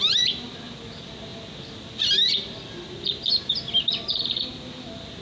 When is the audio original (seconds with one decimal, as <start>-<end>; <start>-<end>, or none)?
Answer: 0.0-5.2